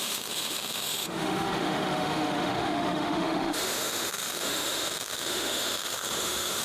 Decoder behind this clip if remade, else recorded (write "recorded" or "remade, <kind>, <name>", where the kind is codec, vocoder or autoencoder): remade, autoencoder, DAC-VAE